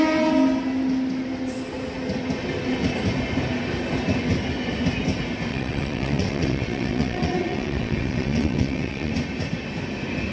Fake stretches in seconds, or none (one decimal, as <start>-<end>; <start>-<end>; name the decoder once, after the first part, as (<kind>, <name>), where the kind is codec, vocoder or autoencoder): 5.5-9.1 (vocoder, WaveNeXt)